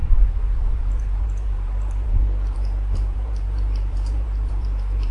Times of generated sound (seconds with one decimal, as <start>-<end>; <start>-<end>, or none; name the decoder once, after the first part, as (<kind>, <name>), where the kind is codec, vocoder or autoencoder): 0.0-5.1 (vocoder, BigVGAN v2)